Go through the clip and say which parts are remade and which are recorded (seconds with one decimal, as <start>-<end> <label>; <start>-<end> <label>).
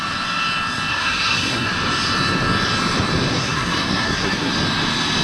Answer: 0.0-0.9 recorded; 0.9-1.7 remade; 1.7-3.3 recorded; 3.3-4.5 remade; 4.5-5.2 recorded